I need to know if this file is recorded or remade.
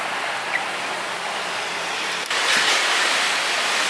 recorded